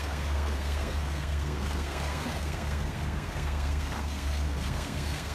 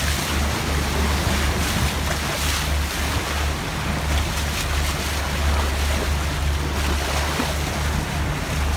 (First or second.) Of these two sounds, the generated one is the first